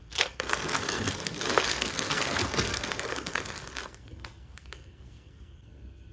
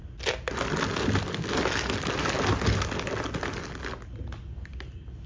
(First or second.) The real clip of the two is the second